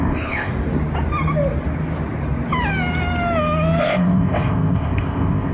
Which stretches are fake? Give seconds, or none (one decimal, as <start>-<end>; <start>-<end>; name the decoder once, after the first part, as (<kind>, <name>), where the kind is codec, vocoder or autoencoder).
0.0-0.5 (codec, ZipCodec); 3.8-5.5